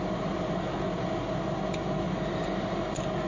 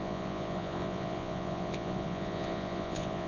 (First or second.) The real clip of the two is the first